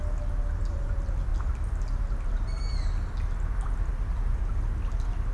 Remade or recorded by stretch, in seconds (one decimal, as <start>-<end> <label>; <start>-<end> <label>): 0.0-5.3 recorded